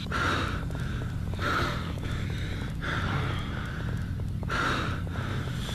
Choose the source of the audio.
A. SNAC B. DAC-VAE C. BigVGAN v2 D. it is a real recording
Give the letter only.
D